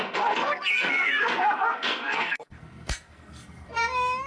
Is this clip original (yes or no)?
no